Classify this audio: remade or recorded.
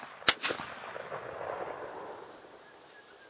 recorded